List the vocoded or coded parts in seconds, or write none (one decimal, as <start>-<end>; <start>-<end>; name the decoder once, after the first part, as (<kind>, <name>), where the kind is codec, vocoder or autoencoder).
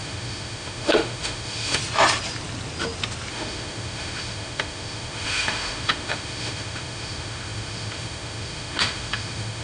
0.0-1.8 (autoencoder, DAC-VAE); 3.3-9.6